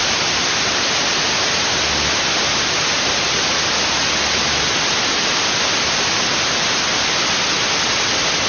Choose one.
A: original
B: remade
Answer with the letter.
A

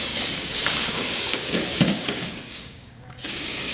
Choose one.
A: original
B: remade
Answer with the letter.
B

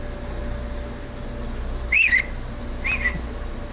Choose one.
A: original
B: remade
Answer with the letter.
A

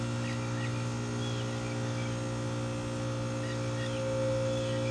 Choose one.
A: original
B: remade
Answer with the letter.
A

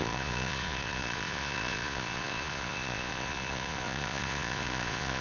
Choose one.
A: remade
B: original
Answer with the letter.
A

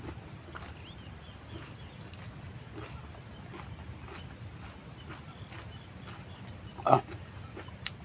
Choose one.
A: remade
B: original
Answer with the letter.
B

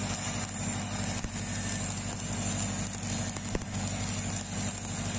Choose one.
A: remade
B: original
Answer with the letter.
B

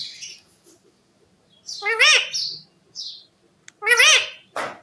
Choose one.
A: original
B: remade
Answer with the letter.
A